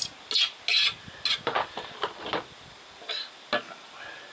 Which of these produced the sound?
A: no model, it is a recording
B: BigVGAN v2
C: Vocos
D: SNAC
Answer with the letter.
A